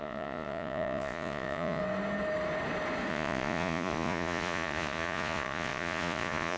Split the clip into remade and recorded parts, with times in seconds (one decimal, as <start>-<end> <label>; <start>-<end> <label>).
0.0-1.8 remade; 1.8-3.1 recorded; 3.1-6.6 remade